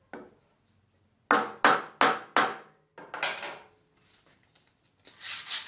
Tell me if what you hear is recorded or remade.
recorded